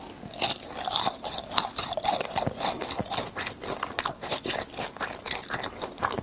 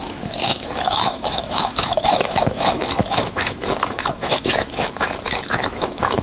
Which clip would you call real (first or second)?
first